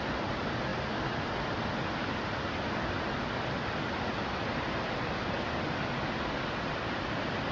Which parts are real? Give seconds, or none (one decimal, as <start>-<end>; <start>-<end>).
0.0-7.5

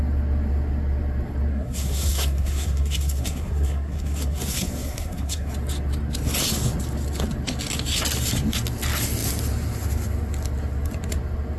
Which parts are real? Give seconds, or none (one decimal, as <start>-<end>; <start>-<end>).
0.0-1.5; 5.5-11.6

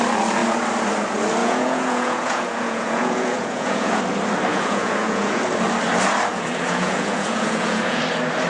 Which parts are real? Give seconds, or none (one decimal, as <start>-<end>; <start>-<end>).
0.0-1.4; 4.0-4.5; 5.4-6.3; 8.0-8.5

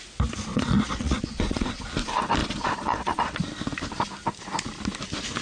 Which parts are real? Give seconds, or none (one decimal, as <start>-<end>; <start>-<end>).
0.0-0.5; 1.8-2.4; 3.4-5.4

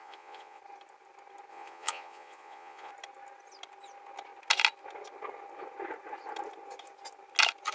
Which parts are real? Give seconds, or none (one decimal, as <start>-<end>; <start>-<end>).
0.6-1.5; 2.9-7.7

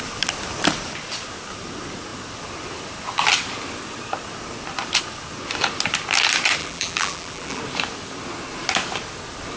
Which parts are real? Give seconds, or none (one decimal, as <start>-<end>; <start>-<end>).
0.0-6.6; 7.6-9.6